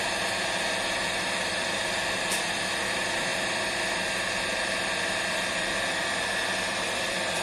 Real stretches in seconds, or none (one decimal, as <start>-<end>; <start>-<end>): none

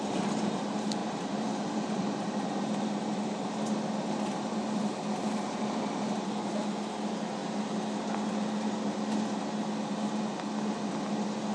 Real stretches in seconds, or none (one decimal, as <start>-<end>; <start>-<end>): 0.0-1.0; 5.8-11.5

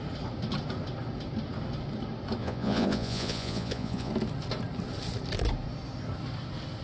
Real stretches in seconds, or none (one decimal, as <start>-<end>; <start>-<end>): 0.0-2.4; 4.1-6.8

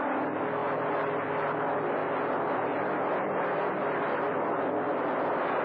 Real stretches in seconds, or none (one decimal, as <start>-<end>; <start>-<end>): 0.0-5.6

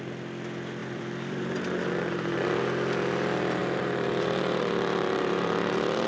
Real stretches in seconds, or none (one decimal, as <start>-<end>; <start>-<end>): 0.0-0.8; 1.6-3.6